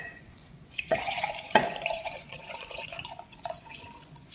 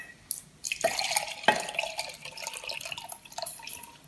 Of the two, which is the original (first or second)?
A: second